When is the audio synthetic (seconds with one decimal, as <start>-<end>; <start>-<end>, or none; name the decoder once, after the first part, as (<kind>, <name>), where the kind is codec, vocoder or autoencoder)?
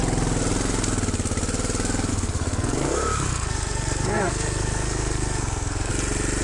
2.1-5.9 (codec, SNAC)